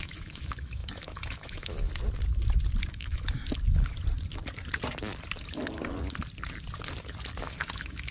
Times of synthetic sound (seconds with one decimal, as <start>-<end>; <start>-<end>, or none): 0.0-1.9; 2.9-3.4; 7.4-8.1